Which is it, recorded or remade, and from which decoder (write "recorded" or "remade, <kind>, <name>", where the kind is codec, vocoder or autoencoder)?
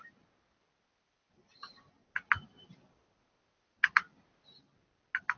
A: recorded